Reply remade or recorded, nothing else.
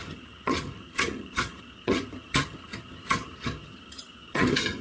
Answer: remade